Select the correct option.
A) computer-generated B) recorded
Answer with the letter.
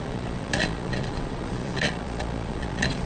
A